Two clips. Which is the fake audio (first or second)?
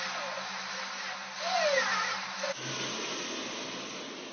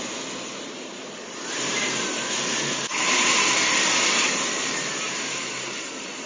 second